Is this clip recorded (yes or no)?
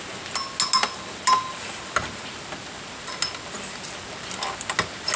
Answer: yes